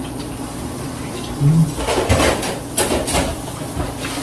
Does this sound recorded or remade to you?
recorded